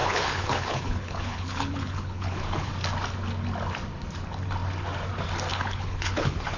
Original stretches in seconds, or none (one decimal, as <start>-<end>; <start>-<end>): 2.7-5.5